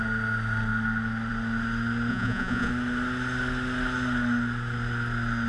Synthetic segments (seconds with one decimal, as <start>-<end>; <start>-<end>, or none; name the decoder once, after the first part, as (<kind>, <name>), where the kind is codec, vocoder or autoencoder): 2.1-2.7 (vocoder, Vocos)